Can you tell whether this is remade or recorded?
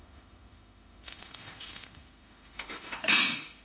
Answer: remade